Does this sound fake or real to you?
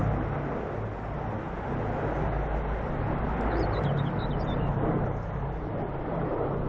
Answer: real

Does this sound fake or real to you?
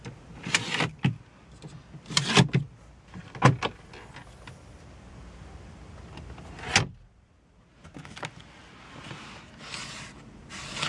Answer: real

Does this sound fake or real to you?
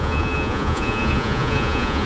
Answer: fake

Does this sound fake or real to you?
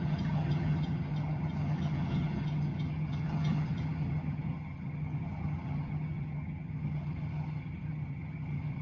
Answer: fake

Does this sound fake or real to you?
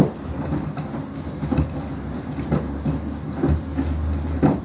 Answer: real